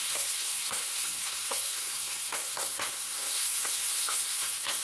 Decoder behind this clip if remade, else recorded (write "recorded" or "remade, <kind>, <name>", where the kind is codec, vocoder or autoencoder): remade, codec, SNAC